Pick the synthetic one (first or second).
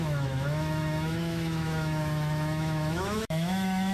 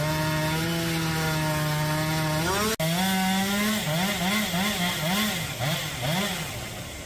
first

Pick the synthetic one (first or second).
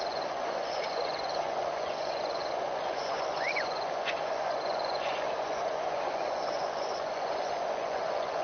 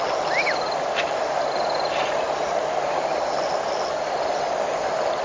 first